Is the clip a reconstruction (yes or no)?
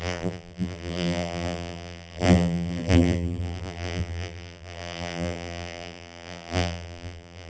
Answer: yes